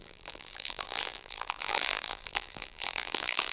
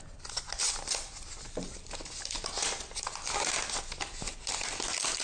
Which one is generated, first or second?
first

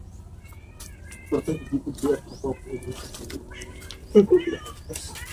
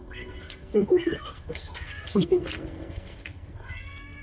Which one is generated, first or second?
second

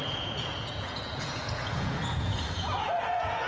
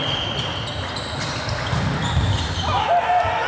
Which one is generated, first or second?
first